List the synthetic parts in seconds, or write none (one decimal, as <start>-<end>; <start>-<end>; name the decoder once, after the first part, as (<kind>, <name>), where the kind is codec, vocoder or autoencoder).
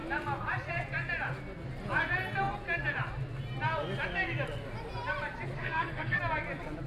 5.6-6.2 (codec, SNAC)